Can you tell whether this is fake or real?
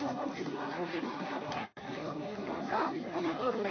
fake